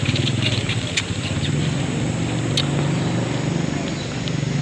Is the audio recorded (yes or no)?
yes